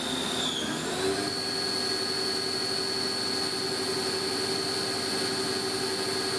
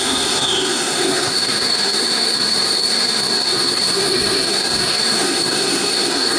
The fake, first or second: second